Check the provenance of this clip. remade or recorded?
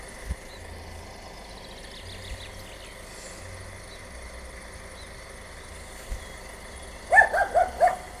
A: recorded